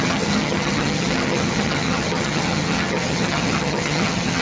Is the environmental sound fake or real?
fake